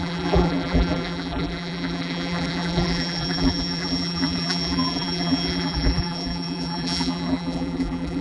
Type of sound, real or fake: fake